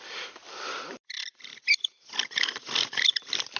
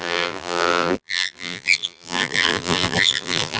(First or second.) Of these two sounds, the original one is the first